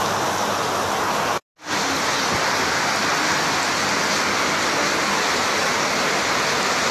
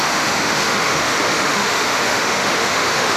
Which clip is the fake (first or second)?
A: second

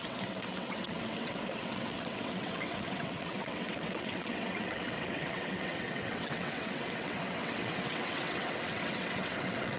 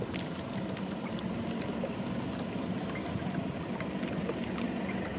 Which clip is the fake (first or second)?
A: first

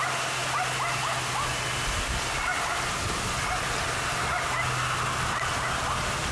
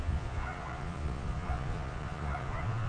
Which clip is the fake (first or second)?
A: second